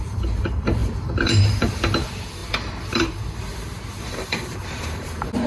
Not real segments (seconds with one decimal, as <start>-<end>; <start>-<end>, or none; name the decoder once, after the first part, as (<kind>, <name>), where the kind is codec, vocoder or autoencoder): 0.0-5.5 (vocoder, BigVGAN v2)